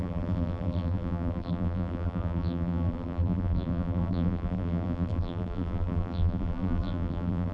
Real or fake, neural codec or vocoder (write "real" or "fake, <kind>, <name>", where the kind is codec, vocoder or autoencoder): fake, vocoder, BigVGAN v2